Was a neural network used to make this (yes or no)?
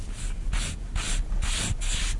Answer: no